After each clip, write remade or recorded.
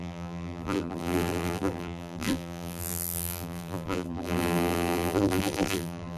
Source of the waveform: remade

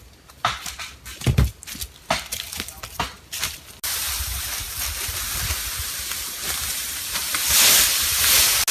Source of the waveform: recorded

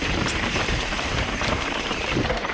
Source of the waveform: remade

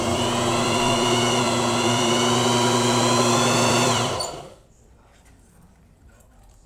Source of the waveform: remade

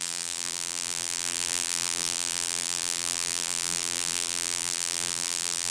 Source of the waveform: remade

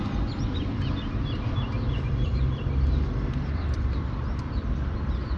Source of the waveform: remade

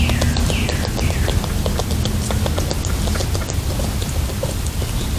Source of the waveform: recorded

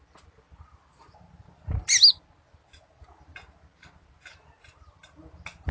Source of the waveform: recorded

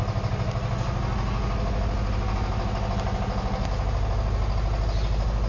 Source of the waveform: recorded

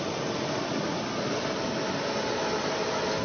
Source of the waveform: recorded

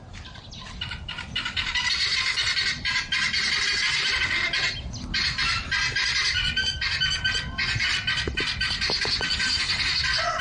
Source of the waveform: recorded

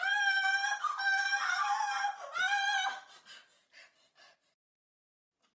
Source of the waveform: recorded